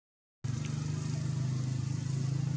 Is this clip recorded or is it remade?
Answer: recorded